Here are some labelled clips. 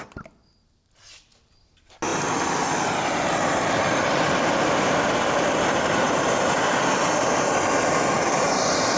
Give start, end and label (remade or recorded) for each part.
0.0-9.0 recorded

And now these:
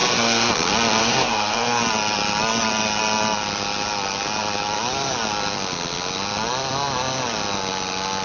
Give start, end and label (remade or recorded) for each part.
0.0-0.5 remade; 0.5-1.0 recorded; 1.0-1.8 remade; 1.8-8.2 recorded

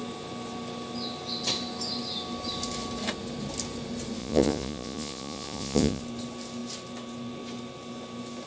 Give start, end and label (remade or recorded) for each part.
0.0-4.2 recorded; 4.2-6.0 remade; 6.0-8.5 recorded

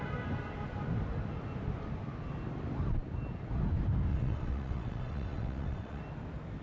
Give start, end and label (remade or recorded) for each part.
0.0-4.1 recorded; 4.1-6.0 remade; 6.0-6.6 recorded

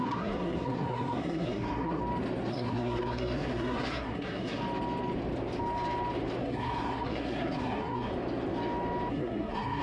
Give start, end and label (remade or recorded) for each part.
0.0-2.0 remade; 2.0-2.5 recorded; 2.5-4.6 remade; 4.6-6.4 recorded; 6.4-8.1 remade; 8.1-9.1 recorded; 9.1-9.8 remade

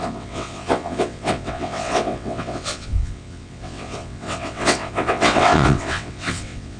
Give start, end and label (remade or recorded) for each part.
0.0-6.8 remade

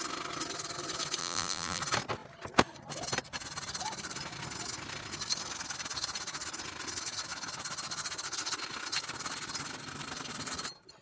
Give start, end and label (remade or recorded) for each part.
0.0-1.2 recorded; 1.2-1.8 remade; 1.8-11.0 recorded

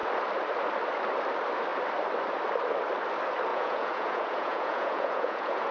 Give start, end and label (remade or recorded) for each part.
0.0-3.5 recorded; 3.5-5.7 remade